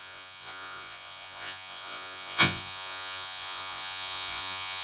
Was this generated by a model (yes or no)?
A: yes